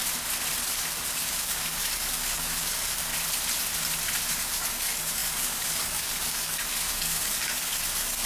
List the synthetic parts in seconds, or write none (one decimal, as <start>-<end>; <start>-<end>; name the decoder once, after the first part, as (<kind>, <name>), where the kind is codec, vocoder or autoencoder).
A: 0.7-3.1 (codec, DAC); 4.3-8.3